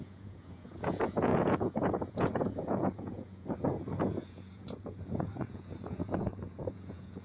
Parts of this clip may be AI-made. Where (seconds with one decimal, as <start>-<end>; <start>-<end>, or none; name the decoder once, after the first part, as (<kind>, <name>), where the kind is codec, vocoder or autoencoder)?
0.0-7.2 (vocoder, Vocos)